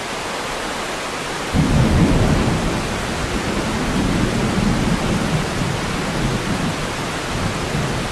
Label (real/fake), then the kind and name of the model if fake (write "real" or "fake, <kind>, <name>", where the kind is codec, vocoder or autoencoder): real